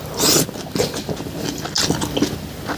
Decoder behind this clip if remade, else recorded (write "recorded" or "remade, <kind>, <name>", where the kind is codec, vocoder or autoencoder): recorded